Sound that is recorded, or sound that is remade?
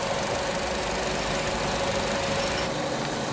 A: recorded